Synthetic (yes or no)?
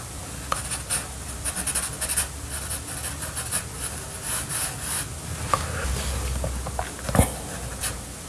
no